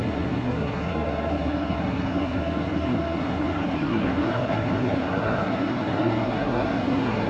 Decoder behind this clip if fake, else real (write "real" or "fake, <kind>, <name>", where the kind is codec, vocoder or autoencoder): fake, codec, SNAC